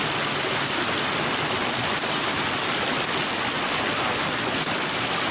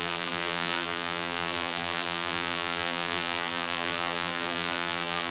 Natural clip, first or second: first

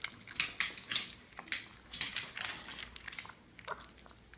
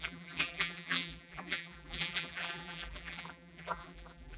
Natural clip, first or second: first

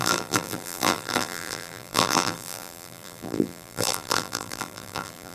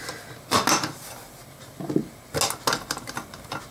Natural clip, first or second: second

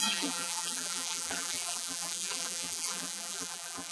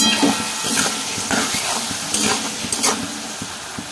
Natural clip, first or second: second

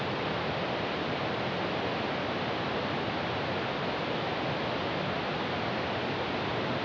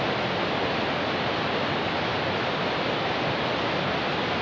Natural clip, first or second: first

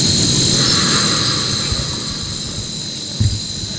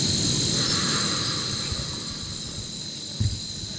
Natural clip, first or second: first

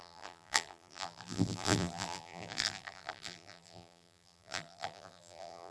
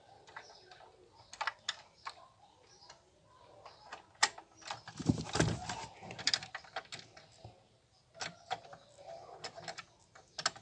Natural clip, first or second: second